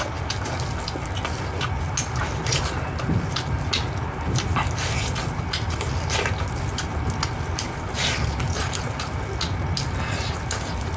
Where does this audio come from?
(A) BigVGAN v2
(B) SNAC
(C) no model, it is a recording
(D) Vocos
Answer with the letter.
C